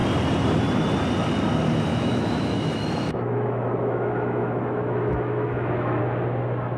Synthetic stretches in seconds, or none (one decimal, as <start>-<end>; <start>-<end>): 1.9-6.0